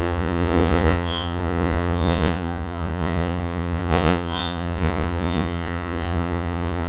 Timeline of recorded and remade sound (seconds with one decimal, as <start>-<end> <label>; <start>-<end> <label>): 0.0-6.9 remade